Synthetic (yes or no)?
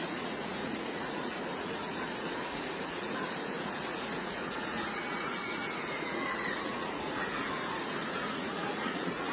yes